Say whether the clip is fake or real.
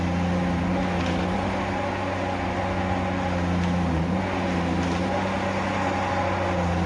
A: real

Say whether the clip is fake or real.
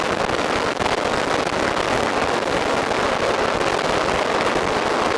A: real